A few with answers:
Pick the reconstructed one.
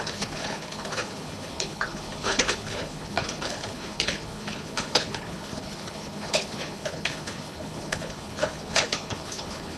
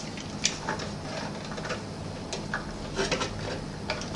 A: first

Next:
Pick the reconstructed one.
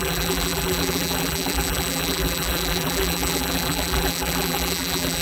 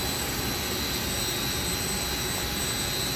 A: first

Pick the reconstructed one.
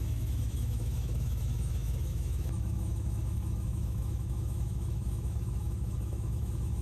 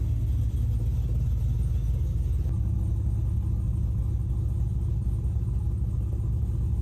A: first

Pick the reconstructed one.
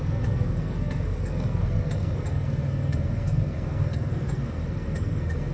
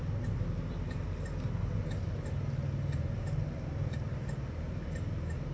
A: first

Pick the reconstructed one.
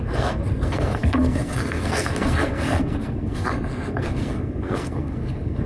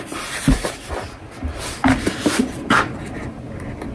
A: first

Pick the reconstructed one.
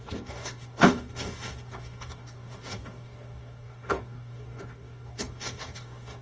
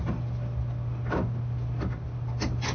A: first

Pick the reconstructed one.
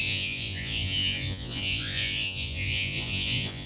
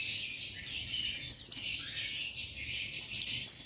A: first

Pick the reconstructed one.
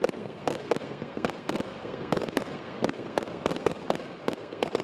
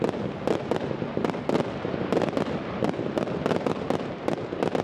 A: first